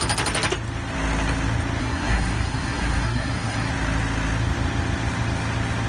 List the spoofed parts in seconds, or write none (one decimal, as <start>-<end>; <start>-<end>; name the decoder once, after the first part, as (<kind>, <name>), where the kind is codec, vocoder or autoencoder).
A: 1.8-3.7 (codec, SNAC)